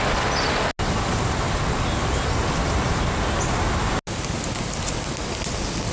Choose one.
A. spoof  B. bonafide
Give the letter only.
B